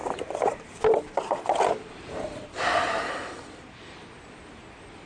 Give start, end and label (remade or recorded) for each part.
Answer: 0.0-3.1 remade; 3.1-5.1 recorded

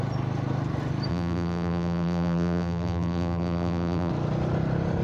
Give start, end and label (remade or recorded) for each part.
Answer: 0.0-1.1 recorded; 1.1-4.1 remade; 4.1-5.0 recorded

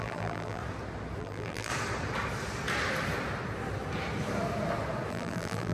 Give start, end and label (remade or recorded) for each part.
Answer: 0.0-0.6 remade; 0.6-1.2 recorded; 1.2-1.7 remade; 1.7-5.1 recorded; 5.1-5.7 remade

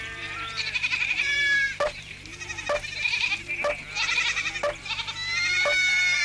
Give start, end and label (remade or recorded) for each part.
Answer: 0.0-2.3 remade; 2.3-4.8 recorded; 4.8-6.2 remade

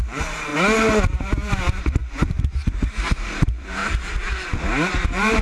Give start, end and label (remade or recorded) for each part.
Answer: 0.0-0.5 remade; 0.5-1.5 recorded; 1.5-3.8 remade; 3.8-4.9 recorded; 4.9-5.4 remade

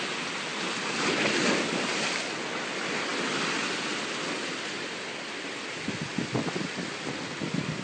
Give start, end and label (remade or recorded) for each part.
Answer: 0.0-0.5 recorded; 0.5-1.8 remade; 1.8-7.8 recorded

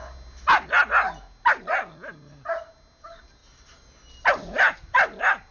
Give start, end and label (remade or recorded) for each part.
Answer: 0.0-5.5 recorded

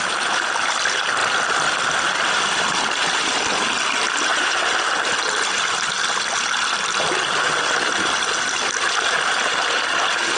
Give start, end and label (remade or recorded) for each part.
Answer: 0.0-1.2 recorded; 1.2-1.8 remade; 1.8-4.3 recorded; 4.3-8.6 remade; 8.6-10.4 recorded